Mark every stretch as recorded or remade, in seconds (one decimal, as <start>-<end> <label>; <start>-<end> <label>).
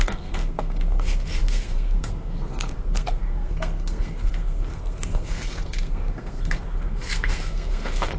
0.0-8.2 remade